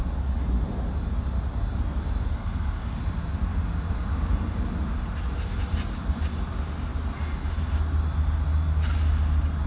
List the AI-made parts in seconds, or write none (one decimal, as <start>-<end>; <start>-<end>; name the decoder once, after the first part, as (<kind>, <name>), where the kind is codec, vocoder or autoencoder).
2.3-3.0 (codec, SNAC)